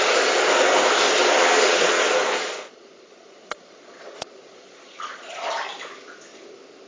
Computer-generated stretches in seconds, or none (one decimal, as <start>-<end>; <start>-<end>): 1.4-5.5